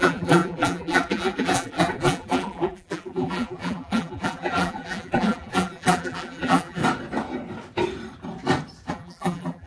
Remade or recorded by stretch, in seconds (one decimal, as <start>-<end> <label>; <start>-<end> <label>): 0.0-6.8 remade; 6.8-8.9 recorded; 8.9-9.7 remade